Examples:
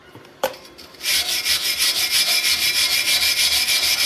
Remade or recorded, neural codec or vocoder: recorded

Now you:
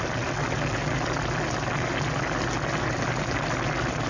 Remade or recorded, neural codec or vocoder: recorded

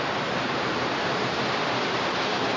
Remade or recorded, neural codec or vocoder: recorded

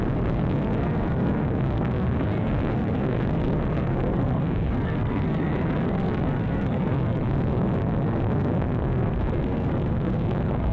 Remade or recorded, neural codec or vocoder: remade, codec, SNAC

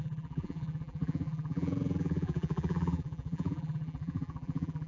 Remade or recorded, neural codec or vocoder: remade, vocoder, BigVGAN v2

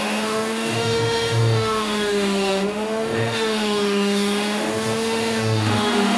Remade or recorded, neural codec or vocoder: remade, autoencoder, DAC-VAE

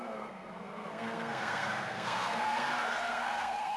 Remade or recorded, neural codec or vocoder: remade, codec, SNAC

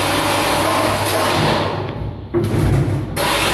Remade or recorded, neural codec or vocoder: recorded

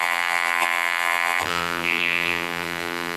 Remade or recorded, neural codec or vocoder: remade, vocoder, BigVGAN v2